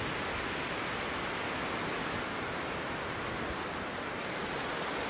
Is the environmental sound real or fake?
real